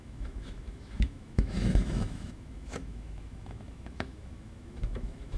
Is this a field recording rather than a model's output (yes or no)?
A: no